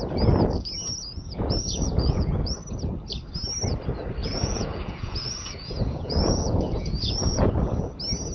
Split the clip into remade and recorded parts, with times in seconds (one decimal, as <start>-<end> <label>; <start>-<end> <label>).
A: 0.0-1.1 recorded; 1.1-2.5 remade; 2.5-4.2 recorded; 4.2-7.5 remade; 7.5-8.3 recorded